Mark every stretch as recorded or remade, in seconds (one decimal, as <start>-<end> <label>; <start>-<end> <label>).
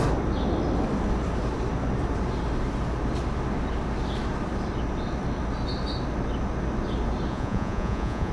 0.0-7.3 recorded; 7.3-8.3 remade